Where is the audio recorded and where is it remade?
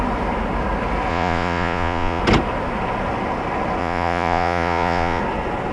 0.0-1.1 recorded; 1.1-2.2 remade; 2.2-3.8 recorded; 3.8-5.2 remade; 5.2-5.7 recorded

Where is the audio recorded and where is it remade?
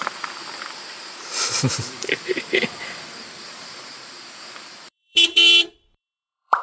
0.0-1.2 recorded; 1.2-2.3 remade; 2.3-3.0 recorded; 3.0-6.6 remade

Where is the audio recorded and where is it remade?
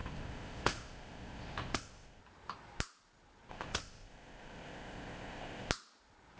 0.0-2.2 remade; 2.2-3.5 recorded; 3.5-5.7 remade; 5.7-6.4 recorded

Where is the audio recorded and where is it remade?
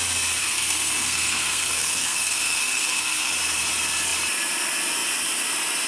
0.0-0.4 recorded; 0.4-3.3 remade; 3.3-5.9 recorded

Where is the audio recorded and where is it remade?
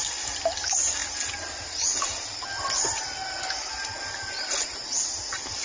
0.0-5.6 recorded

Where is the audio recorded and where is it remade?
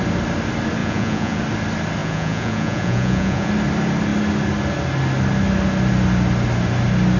0.0-0.8 recorded; 0.8-1.4 remade; 1.4-2.0 recorded; 2.0-3.5 remade; 3.5-7.2 recorded